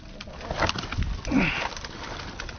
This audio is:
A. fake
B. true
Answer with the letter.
B